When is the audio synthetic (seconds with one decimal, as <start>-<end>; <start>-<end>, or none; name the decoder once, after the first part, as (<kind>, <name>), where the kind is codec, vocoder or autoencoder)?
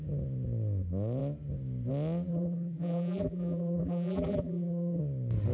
2.3-5.0 (vocoder, BigVGAN v2)